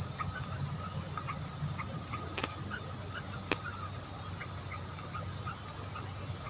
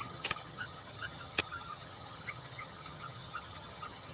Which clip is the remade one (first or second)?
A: second